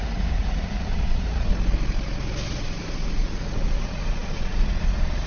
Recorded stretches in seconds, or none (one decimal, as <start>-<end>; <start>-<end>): 1.5-2.6